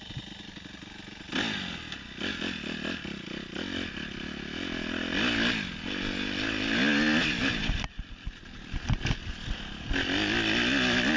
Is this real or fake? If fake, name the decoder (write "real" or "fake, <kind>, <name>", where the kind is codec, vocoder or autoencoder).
real